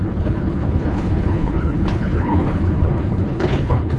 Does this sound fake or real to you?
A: fake